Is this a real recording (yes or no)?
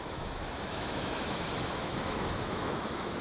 no